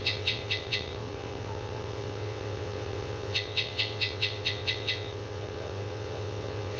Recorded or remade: remade